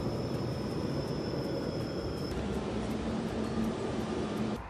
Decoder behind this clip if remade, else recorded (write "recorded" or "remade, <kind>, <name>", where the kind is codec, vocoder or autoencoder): remade, vocoder, BigVGAN v2